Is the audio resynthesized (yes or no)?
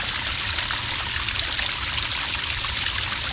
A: no